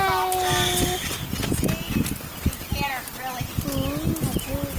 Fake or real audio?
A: real